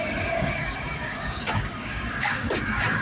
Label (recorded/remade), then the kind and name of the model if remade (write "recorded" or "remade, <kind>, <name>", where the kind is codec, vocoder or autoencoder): remade, codec, DAC